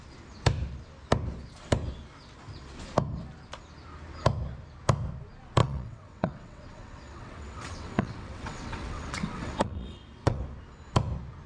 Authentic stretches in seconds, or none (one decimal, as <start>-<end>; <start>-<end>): 0.0-5.6; 10.4-11.5